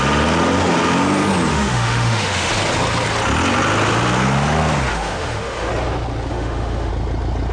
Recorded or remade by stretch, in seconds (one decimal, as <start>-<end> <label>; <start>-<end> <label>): 0.0-1.5 recorded; 1.5-2.5 remade; 2.5-4.9 recorded; 4.9-5.7 remade; 5.7-6.3 recorded; 6.3-6.9 remade; 6.9-7.5 recorded